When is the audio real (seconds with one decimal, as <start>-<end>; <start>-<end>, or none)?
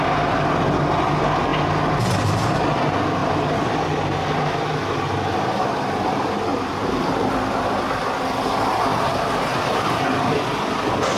0.0-6.5; 7.3-8.9; 10.0-11.2